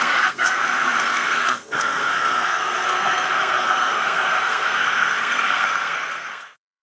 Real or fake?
fake